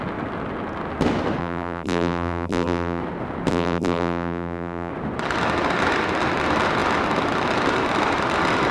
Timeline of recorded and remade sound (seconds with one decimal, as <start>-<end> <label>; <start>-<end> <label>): 0.0-1.4 recorded; 1.4-3.0 remade; 3.0-3.5 recorded; 3.5-4.9 remade; 4.9-8.7 recorded